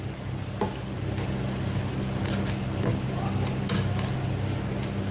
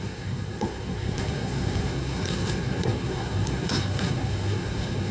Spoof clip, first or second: second